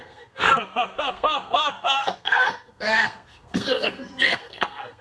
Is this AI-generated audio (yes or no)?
yes